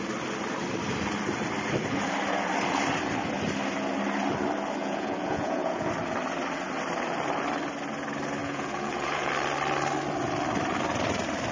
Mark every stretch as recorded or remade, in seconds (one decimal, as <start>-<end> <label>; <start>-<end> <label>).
0.0-4.8 recorded; 4.8-5.9 remade; 5.9-8.4 recorded; 8.4-9.3 remade; 9.3-11.5 recorded